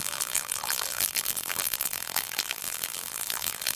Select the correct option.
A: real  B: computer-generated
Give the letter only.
B